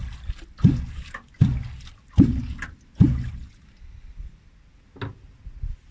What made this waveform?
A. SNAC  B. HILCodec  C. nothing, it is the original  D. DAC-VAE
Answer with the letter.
C